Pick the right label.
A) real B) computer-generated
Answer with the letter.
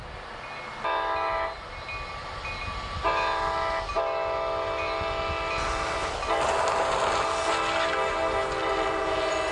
A